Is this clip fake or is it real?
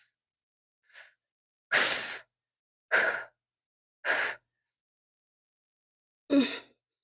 real